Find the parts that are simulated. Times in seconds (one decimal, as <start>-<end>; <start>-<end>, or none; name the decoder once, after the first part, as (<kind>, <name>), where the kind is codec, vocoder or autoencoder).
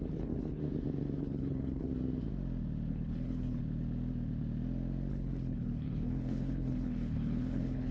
0.0-0.6 (codec, HILCodec); 1.2-1.9; 2.9-3.6; 5.1-7.9